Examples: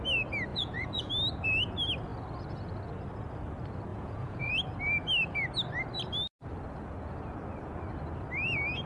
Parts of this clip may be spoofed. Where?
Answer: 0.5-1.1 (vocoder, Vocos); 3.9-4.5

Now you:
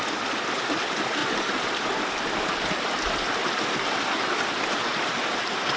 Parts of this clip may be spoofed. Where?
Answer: none